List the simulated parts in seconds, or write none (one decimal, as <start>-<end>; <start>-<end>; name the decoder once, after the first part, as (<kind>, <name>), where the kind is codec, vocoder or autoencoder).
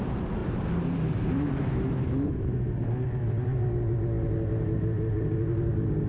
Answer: 0.4-2.3 (vocoder, BigVGAN v2)